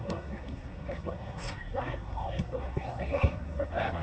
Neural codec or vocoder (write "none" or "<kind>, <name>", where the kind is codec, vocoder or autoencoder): codec, SNAC